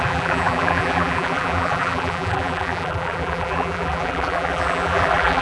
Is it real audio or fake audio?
fake